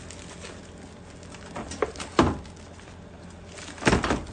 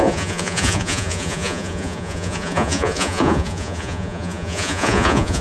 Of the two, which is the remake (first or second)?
second